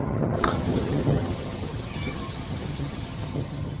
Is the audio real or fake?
fake